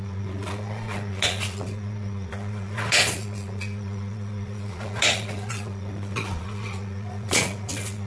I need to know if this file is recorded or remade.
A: remade